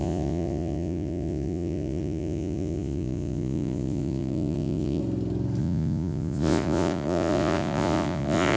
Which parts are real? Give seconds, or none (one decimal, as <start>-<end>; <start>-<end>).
5.0-5.6